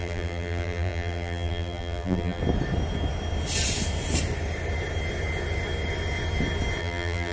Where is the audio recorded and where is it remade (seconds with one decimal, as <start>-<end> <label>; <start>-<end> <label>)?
0.0-2.4 remade; 2.4-6.8 recorded; 6.8-7.3 remade